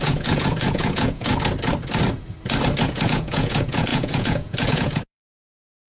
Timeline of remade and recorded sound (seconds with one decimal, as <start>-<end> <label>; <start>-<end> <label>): 0.0-1.3 remade; 1.3-2.8 recorded; 2.8-5.9 remade